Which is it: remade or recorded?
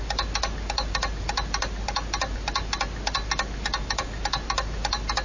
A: recorded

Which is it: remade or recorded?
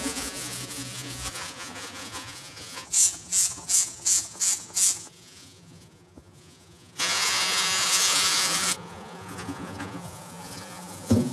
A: remade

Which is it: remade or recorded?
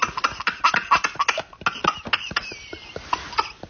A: recorded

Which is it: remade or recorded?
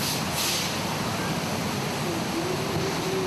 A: remade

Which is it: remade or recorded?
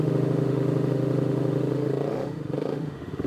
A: remade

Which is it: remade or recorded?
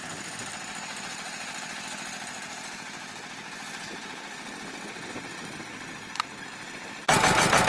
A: recorded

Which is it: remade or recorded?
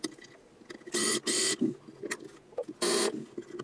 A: recorded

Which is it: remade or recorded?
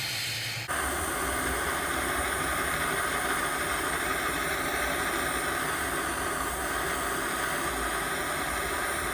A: recorded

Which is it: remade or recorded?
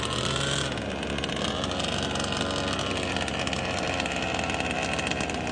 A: recorded